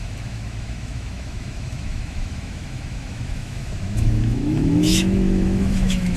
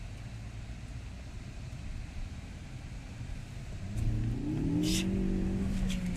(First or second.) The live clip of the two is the second